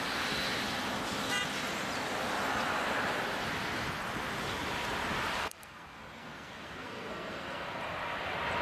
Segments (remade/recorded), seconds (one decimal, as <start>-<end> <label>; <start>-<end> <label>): 0.0-5.4 recorded; 5.4-7.8 remade; 7.8-8.6 recorded